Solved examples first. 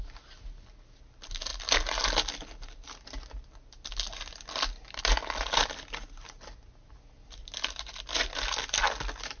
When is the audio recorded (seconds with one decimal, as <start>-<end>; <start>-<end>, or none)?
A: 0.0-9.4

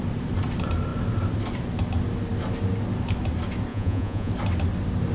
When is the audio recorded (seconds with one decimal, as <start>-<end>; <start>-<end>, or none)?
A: 0.0-3.7; 4.3-5.1

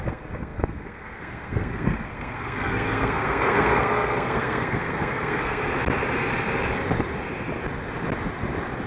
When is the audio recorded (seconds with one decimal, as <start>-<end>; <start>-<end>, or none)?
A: 5.6-8.9

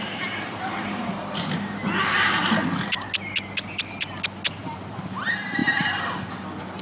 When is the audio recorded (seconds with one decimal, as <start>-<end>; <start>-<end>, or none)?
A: 1.2-4.6; 5.6-6.8